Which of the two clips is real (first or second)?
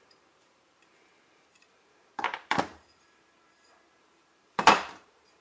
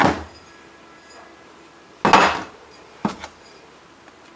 second